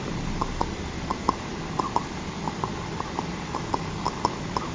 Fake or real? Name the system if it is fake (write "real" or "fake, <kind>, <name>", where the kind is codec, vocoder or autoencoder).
real